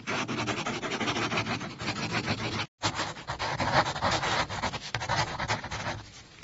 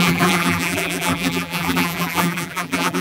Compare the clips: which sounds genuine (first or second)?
first